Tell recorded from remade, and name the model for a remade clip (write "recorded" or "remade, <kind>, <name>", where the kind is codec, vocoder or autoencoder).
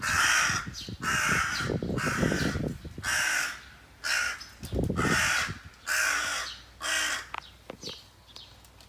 recorded